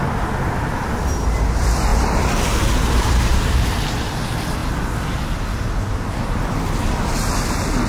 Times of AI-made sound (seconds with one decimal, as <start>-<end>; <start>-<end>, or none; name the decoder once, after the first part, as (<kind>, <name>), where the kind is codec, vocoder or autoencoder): 1.9-3.9 (vocoder, BigVGAN v2)